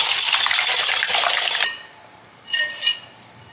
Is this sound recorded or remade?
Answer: recorded